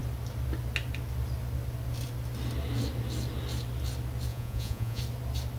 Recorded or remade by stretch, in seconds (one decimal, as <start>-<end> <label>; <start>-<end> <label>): 0.0-4.3 recorded; 4.3-5.0 remade; 5.0-5.6 recorded